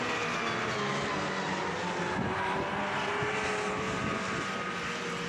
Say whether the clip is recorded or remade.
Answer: recorded